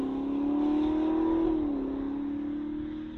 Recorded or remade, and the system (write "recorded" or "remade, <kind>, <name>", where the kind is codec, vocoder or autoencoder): recorded